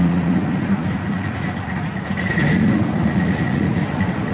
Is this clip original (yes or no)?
no